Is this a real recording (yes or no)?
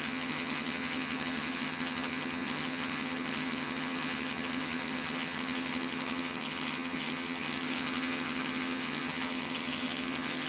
no